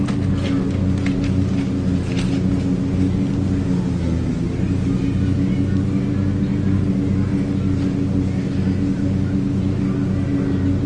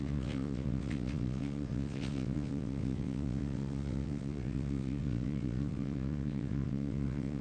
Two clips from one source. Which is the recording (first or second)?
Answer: first